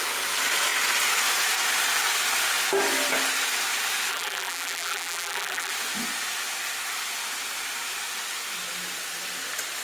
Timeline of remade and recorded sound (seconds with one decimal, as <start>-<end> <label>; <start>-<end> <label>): 0.0-4.1 recorded; 4.1-5.7 remade; 5.7-9.8 recorded